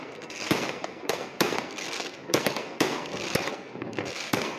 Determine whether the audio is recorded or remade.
remade